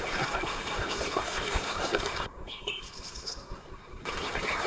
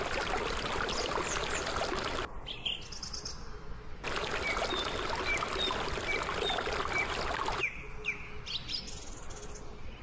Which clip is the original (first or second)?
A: second